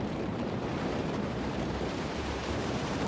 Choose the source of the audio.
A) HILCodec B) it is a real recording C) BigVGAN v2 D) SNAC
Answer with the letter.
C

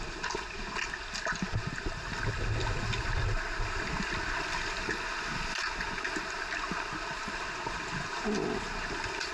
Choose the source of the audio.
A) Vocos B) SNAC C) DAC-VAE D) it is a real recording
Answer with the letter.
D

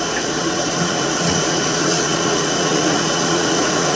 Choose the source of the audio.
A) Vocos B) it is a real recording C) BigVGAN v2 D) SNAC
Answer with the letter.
A